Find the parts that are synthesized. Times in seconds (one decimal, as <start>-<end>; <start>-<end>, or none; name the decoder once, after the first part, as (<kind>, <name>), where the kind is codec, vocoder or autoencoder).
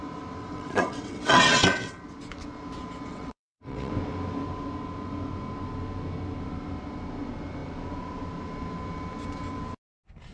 0.4-2.0 (vocoder, WaveNeXt); 3.1-3.9